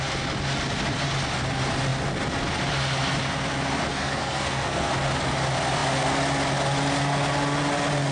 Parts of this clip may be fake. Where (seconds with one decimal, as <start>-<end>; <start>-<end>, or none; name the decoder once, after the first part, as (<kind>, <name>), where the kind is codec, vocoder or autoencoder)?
3.9-4.9 (codec, SNAC)